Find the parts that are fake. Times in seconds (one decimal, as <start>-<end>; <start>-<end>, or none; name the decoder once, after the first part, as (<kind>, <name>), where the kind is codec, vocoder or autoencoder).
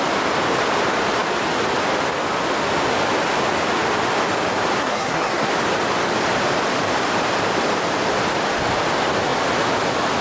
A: 4.8-5.5 (codec, SNAC)